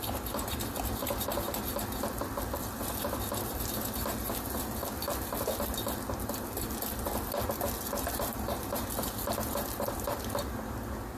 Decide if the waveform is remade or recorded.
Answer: recorded